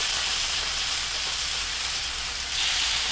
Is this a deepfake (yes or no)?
yes